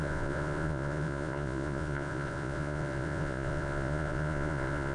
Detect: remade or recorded remade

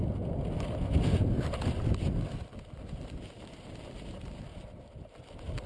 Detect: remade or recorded recorded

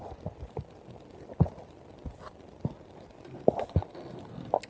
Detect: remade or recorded recorded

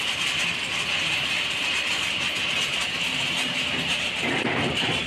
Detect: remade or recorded recorded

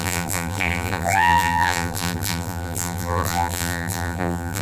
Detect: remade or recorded remade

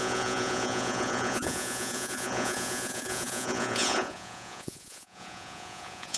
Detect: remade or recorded remade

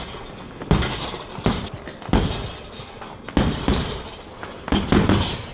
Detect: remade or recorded recorded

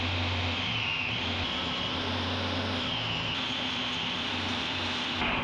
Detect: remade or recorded recorded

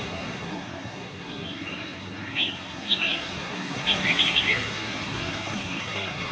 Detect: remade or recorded remade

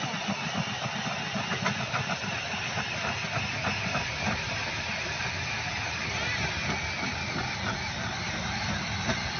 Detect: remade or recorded recorded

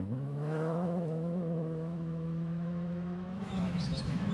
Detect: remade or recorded remade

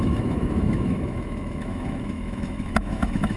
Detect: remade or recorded remade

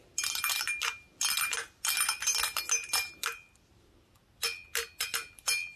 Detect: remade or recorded recorded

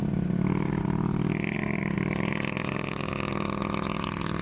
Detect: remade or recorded recorded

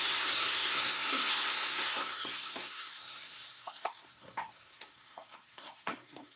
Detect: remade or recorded remade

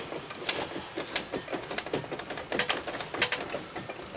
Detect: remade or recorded recorded